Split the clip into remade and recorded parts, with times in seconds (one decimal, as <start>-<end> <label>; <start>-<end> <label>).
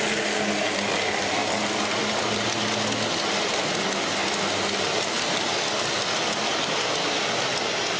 0.0-8.0 recorded